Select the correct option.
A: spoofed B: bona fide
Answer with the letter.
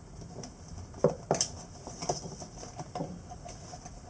B